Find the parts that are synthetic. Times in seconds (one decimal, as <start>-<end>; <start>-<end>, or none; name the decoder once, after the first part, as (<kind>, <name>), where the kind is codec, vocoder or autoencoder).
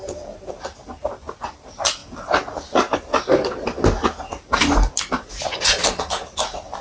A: none